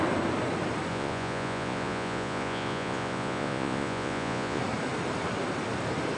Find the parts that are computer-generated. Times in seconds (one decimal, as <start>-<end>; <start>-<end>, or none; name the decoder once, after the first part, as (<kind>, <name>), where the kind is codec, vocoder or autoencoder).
0.9-4.6 (vocoder, Vocos)